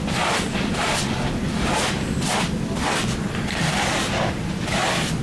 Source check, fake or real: real